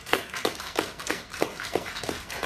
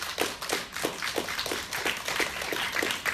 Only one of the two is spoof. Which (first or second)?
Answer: first